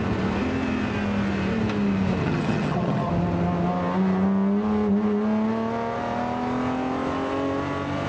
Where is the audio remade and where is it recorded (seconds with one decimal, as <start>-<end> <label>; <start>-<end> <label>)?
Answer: 0.0-2.2 recorded; 2.2-3.1 remade; 3.1-8.1 recorded